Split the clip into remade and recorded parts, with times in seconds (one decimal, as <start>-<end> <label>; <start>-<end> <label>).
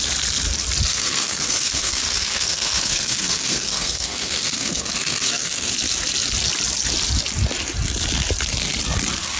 0.0-0.9 recorded; 0.9-5.7 remade; 5.7-9.4 recorded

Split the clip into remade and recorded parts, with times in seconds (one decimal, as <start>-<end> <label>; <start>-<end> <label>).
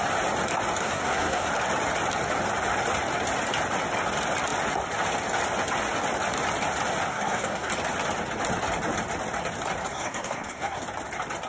0.0-0.8 recorded; 0.8-1.5 remade; 1.5-7.1 recorded; 7.1-7.7 remade; 7.7-9.9 recorded; 9.9-10.8 remade; 10.8-11.5 recorded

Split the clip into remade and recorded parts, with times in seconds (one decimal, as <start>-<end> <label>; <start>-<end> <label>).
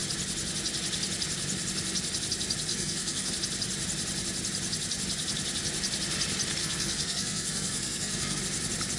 0.0-2.7 recorded; 2.7-3.3 remade; 3.3-6.6 recorded; 6.6-8.4 remade; 8.4-9.0 recorded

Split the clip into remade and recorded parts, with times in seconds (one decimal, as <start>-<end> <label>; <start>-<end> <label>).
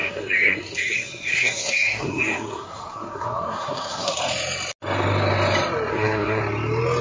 0.0-4.2 remade; 4.2-5.9 recorded; 5.9-6.4 remade; 6.4-7.0 recorded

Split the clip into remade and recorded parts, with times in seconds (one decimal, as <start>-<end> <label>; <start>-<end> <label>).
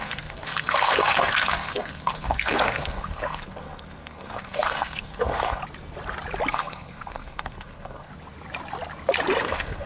0.0-5.6 remade; 5.6-6.5 recorded; 6.5-8.1 remade; 8.1-9.4 recorded; 9.4-9.9 remade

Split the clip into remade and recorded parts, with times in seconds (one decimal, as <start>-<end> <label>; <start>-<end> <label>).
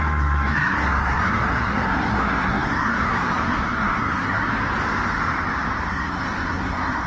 0.0-4.5 remade; 4.5-5.9 recorded; 5.9-7.1 remade